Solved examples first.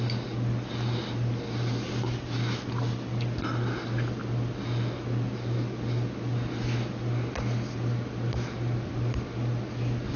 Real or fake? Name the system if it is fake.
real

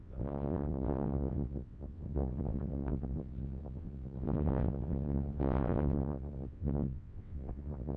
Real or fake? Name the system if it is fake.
fake, vocoder, WaveNeXt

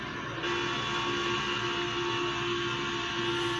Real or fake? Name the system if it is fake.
real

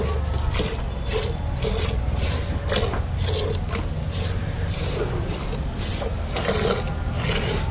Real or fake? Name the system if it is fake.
real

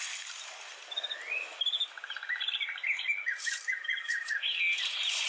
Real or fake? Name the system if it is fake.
real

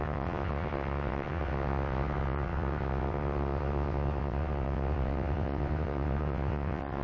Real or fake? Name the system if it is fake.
fake, vocoder, WaveNeXt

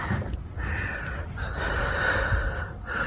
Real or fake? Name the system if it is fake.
real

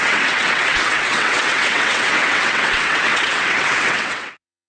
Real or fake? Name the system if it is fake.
fake, vocoder, WaveNeXt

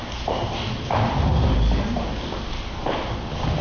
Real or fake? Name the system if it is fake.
real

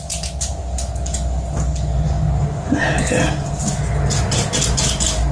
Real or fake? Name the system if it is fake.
real